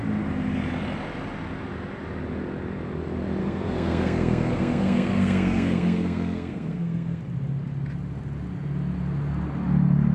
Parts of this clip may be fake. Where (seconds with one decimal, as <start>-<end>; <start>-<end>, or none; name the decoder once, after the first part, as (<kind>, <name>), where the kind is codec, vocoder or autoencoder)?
3.4-7.2 (codec, SNAC)